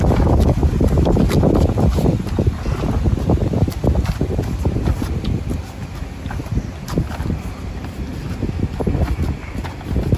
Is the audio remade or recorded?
recorded